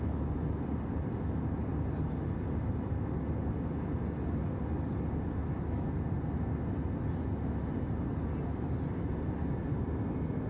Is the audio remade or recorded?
recorded